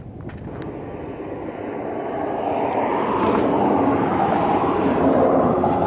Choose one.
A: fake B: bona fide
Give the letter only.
B